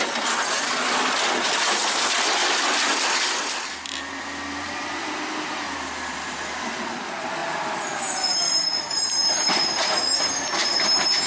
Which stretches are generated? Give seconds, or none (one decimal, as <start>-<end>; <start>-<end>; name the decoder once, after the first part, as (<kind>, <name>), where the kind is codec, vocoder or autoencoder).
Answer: 2.4-6.8 (vocoder, BigVGAN v2); 7.4-11.3